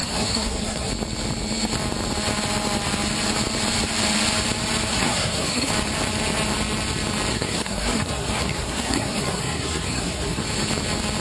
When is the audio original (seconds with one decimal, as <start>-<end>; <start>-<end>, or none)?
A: 0.9-4.9; 5.7-7.3; 10.4-11.2